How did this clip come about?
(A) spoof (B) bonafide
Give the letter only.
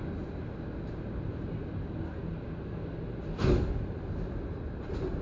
B